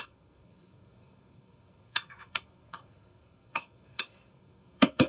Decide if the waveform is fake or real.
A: fake